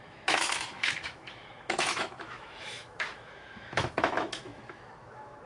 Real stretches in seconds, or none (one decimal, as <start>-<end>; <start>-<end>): none